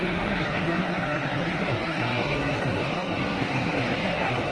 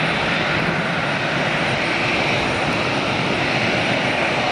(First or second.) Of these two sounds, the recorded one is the second